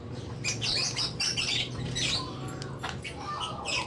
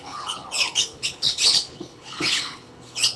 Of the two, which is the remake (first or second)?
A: second